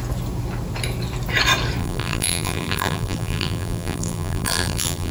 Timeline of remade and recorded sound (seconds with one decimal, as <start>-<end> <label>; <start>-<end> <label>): 0.0-1.8 recorded; 1.8-5.1 remade